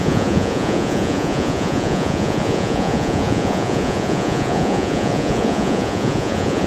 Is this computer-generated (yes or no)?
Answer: yes